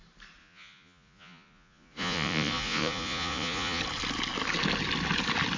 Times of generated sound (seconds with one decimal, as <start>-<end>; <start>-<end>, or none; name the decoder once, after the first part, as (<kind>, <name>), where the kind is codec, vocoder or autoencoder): 0.4-3.8 (vocoder, Vocos)